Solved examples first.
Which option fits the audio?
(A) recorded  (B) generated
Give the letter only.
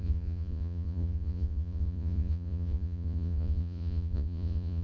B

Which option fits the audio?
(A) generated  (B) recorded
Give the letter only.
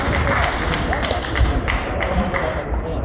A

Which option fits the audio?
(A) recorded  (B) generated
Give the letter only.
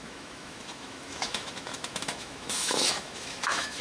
B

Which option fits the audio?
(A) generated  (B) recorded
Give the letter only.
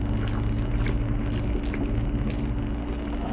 B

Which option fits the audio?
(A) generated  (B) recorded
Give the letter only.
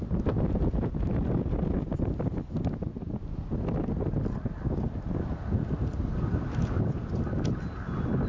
B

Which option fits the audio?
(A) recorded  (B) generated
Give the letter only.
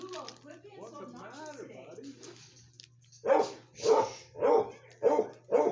A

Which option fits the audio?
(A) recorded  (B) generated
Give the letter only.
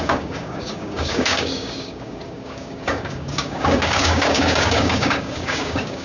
B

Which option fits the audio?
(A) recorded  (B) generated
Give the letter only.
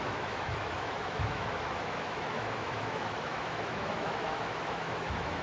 B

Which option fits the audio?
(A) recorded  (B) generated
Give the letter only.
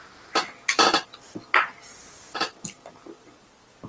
A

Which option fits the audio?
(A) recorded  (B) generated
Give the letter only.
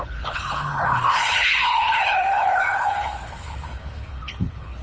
B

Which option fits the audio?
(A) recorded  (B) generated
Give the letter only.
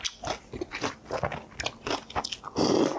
A